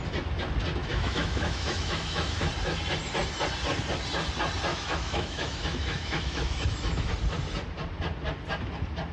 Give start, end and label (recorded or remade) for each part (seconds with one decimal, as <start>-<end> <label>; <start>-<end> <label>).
0.0-0.8 recorded; 0.8-2.5 remade; 2.5-4.7 recorded; 4.7-7.1 remade; 7.1-9.1 recorded